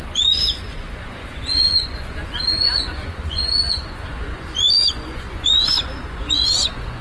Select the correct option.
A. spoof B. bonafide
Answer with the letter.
A